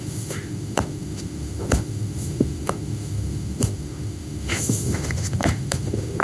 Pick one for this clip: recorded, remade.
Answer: remade